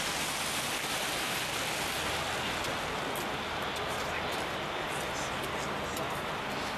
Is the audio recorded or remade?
recorded